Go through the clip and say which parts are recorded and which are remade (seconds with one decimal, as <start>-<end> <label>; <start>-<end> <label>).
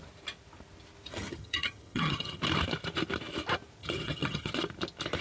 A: 0.0-1.1 recorded; 1.1-2.4 remade; 2.4-3.8 recorded; 3.8-4.5 remade; 4.5-5.2 recorded